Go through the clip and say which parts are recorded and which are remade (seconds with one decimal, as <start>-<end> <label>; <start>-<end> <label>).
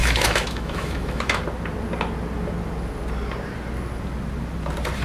0.0-1.4 remade; 1.4-5.0 recorded